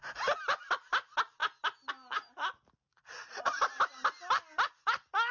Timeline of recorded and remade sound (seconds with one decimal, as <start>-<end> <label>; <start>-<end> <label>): 0.0-2.9 recorded; 2.9-3.6 remade; 3.6-5.3 recorded